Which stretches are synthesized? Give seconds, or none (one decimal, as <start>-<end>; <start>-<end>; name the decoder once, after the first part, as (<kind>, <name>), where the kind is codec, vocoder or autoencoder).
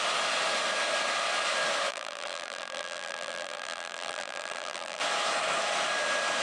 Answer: 1.9-5.0 (vocoder, BigVGAN v2)